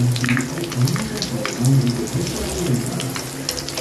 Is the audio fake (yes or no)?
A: no